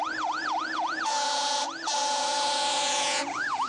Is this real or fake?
fake